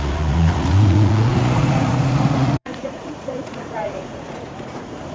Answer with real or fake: fake